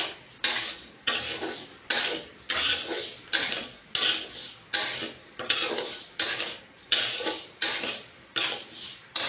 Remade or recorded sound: recorded